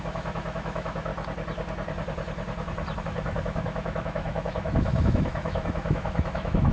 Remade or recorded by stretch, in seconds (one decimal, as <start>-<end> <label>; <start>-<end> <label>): 0.0-1.1 remade; 1.1-3.0 recorded; 3.0-6.7 remade